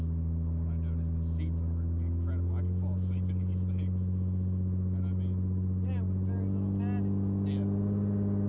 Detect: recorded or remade recorded